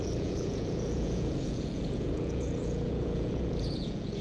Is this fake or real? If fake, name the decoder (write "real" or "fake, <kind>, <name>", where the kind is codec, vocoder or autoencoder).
fake, vocoder, Vocos